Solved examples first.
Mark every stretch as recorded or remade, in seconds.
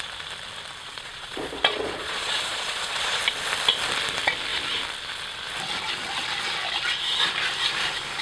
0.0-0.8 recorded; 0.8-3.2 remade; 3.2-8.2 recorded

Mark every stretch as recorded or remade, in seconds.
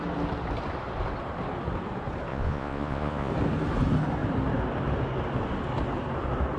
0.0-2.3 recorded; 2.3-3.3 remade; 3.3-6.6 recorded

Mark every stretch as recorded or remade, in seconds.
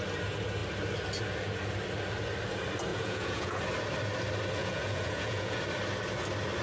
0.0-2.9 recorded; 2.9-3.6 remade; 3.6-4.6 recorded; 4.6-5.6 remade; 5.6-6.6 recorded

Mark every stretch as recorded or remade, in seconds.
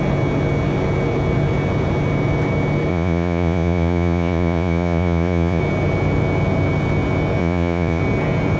0.0-2.9 recorded; 2.9-5.6 remade; 5.6-7.4 recorded; 7.4-8.0 remade; 8.0-8.6 recorded